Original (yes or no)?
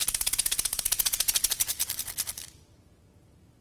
yes